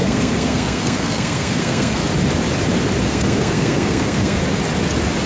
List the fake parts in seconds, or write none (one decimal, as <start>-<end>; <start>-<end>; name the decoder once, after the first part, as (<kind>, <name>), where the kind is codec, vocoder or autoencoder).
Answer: 0.0-2.0 (codec, SNAC); 3.0-4.4